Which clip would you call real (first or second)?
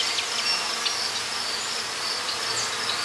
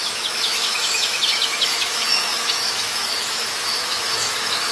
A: first